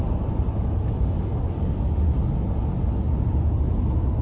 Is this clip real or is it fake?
real